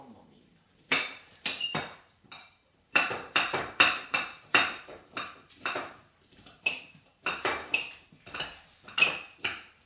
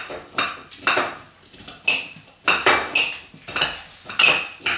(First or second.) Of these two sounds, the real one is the second